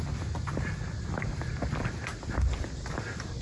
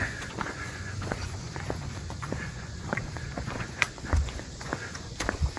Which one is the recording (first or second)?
first